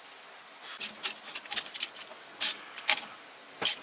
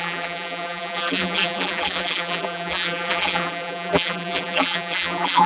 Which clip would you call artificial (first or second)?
second